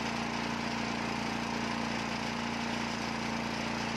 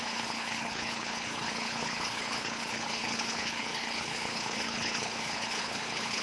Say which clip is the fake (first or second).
second